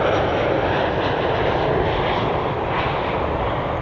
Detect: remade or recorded recorded